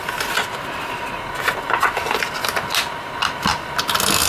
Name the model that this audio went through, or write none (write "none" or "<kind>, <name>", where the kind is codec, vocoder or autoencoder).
none